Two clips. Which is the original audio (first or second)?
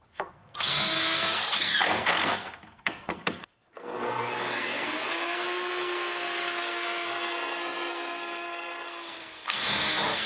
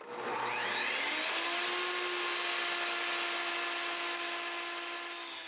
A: second